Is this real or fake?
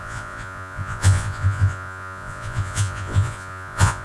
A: fake